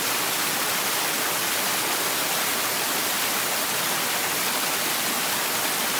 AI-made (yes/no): no